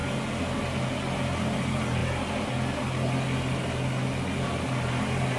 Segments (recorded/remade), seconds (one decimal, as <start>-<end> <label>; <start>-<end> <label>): 0.0-5.4 recorded